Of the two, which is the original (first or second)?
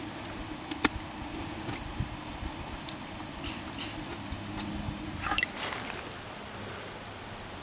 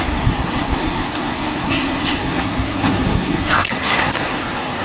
first